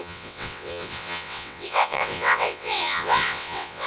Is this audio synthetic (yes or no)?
yes